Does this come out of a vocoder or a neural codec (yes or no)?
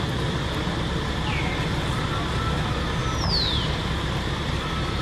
no